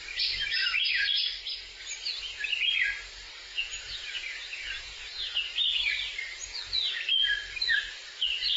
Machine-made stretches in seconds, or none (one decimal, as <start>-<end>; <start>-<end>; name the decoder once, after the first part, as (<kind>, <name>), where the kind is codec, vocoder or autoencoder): 3.4-5.4 (vocoder, Vocos)